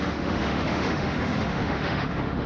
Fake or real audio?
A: fake